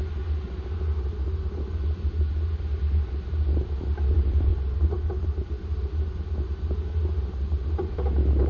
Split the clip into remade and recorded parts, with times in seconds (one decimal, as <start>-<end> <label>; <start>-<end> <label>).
0.0-8.5 recorded